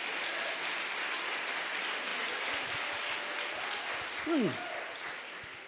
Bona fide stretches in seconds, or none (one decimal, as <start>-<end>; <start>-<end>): 0.0-5.7